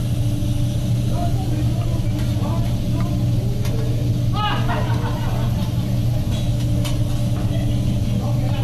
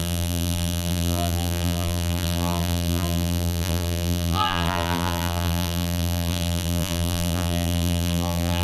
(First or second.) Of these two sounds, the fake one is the second